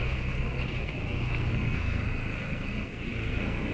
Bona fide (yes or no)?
no